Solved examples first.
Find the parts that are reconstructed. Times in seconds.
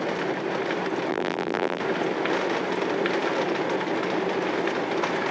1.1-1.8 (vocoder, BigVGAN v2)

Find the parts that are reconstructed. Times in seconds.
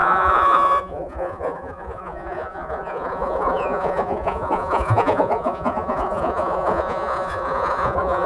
0.0-8.3 (vocoder, Vocos)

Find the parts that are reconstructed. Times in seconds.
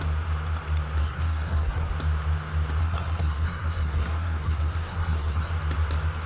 1.0-1.9 (codec, SNAC); 2.8-5.5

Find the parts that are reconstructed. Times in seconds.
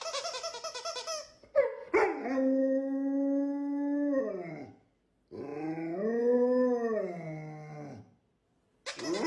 none